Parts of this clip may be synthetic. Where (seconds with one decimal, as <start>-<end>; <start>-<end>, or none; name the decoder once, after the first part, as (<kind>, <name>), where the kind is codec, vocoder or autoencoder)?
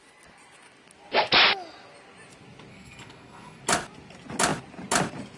2.7-3.6 (codec, SNAC)